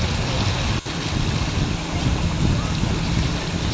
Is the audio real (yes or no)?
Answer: yes